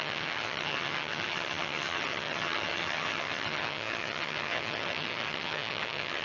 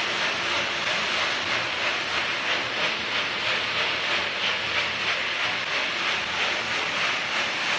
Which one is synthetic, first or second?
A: first